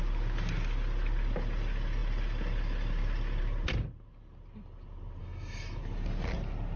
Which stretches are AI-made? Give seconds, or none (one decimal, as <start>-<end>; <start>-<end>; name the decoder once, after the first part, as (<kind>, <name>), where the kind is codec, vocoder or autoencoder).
5.2-5.8 (autoencoder, DAC-VAE)